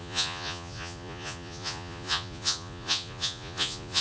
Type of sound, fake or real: fake